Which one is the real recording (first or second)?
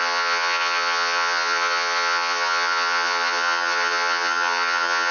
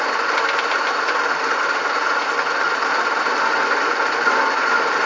second